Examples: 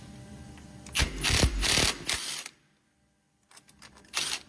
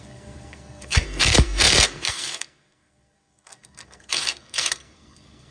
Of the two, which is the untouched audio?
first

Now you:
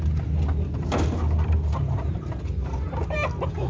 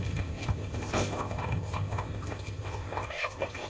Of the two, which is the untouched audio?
first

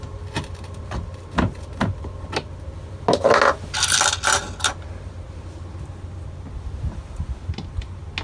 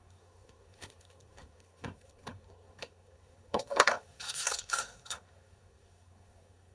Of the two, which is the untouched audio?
first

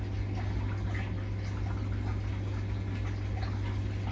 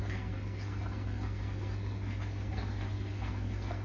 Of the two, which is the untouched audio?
first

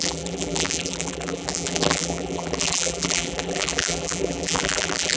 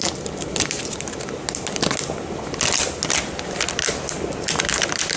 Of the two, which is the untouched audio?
second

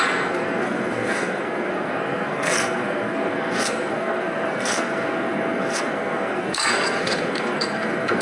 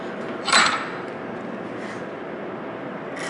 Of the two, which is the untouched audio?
second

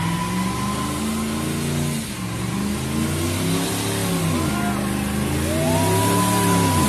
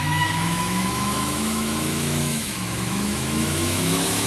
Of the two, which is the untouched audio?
first